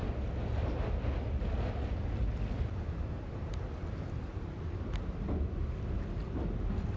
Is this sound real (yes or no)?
yes